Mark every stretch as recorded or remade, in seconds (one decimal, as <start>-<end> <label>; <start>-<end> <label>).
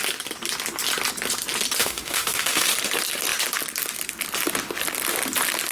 0.0-1.8 recorded; 1.8-2.7 remade; 2.7-5.7 recorded